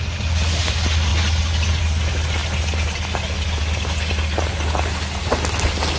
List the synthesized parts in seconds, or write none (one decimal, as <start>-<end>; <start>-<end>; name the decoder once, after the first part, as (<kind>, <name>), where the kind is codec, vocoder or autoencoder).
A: none